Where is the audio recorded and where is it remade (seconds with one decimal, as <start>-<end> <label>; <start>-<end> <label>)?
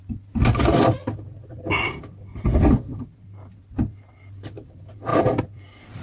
0.0-6.0 recorded